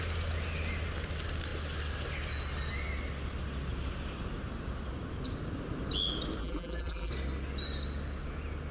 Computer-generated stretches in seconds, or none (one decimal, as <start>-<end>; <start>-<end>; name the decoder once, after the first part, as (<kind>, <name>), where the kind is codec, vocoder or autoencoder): 6.4-7.1 (vocoder, BigVGAN v2)